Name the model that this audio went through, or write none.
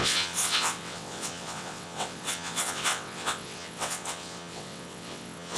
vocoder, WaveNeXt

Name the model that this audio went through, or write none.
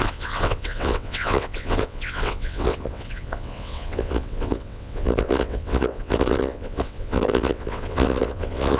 vocoder, WaveNeXt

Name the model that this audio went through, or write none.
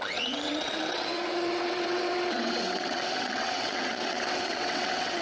vocoder, WaveNeXt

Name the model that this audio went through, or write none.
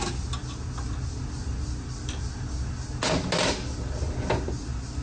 none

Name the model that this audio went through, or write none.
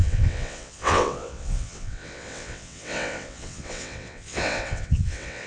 vocoder, WaveNeXt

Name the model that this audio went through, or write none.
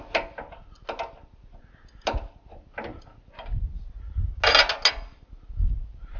none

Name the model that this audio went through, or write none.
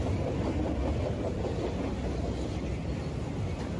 none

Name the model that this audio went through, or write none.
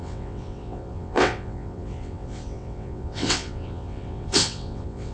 vocoder, WaveNeXt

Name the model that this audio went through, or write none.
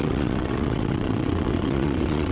vocoder, WaveNeXt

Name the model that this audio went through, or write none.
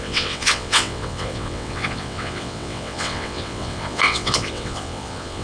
vocoder, WaveNeXt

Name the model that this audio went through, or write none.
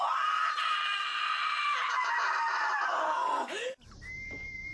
none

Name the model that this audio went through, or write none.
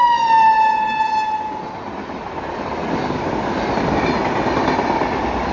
none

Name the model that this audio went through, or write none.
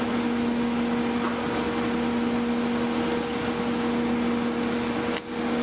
none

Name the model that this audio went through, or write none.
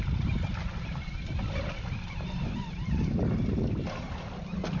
none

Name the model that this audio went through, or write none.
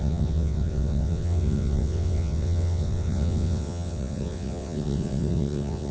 vocoder, WaveNeXt